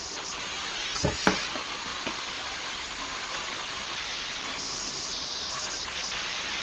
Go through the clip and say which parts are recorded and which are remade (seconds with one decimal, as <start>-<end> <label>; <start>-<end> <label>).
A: 0.0-6.6 recorded